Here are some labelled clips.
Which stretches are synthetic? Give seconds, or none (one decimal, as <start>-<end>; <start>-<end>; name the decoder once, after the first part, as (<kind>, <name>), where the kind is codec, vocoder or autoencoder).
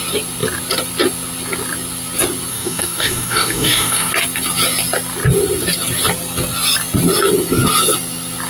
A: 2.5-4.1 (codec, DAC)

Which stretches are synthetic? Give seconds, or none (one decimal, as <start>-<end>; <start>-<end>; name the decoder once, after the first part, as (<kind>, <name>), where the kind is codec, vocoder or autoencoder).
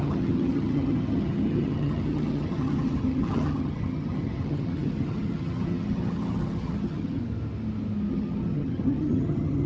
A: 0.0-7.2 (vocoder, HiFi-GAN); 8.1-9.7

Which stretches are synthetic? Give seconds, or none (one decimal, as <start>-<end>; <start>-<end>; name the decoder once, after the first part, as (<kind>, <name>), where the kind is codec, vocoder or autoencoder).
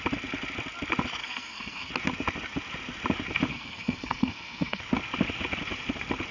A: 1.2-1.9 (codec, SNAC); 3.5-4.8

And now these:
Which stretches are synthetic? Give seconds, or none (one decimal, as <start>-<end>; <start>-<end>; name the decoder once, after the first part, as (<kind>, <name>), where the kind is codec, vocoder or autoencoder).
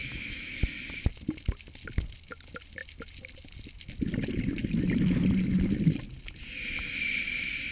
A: 0.0-0.6 (autoencoder, DAC-VAE)